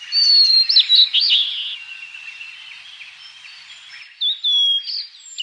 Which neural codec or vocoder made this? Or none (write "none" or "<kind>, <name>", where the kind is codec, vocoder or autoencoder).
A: none